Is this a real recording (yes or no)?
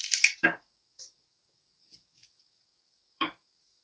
no